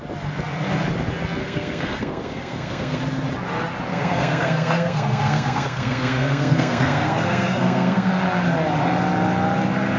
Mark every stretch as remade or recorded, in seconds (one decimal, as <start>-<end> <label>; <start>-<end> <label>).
0.0-1.4 recorded; 1.4-3.0 remade; 3.0-3.9 recorded; 3.9-8.1 remade; 8.1-10.0 recorded